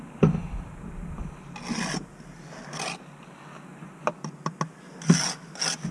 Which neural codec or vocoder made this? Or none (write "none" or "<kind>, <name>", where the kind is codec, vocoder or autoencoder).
none